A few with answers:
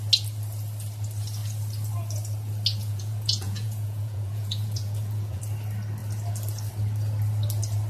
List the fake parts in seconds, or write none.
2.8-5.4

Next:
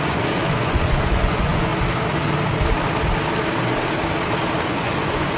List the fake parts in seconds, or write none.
0.0-1.7; 4.6-5.4

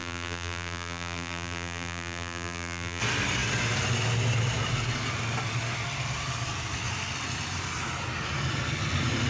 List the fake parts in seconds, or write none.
0.0-3.0

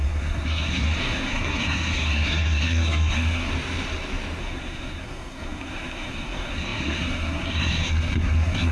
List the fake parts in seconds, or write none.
0.0-3.5; 4.4-8.7

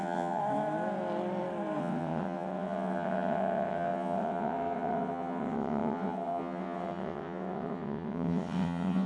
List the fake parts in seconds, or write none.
0.0-0.4; 1.8-9.1